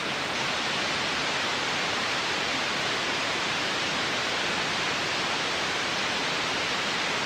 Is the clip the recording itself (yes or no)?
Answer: no